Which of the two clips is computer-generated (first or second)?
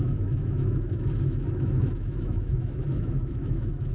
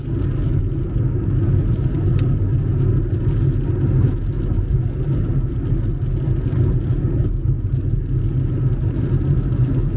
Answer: first